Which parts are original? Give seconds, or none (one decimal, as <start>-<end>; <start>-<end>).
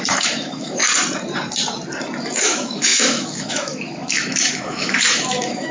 0.8-2.4